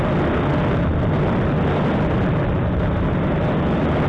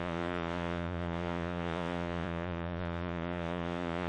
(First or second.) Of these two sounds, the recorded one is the first